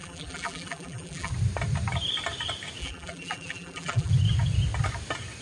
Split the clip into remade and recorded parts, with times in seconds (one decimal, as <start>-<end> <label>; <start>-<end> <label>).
0.0-1.3 remade; 1.3-2.8 recorded; 2.8-4.1 remade; 4.1-5.4 recorded